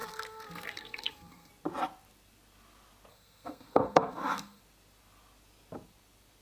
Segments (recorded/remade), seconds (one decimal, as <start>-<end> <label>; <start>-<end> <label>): 0.0-1.5 remade; 1.5-3.1 recorded; 3.1-4.6 remade; 4.6-6.4 recorded